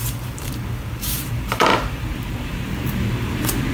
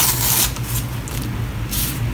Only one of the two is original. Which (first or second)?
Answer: second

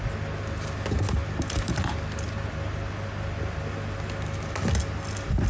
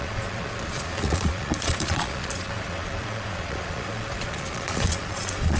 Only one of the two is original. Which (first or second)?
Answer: first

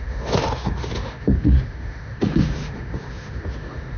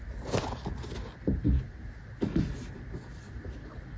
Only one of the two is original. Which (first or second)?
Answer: second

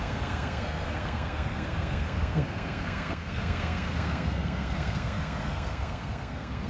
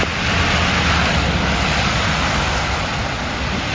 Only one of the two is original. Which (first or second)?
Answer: second